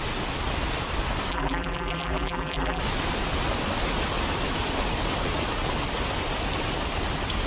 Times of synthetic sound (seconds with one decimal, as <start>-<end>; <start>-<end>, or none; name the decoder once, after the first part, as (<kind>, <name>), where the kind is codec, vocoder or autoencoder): 1.3-2.8 (vocoder, BigVGAN v2)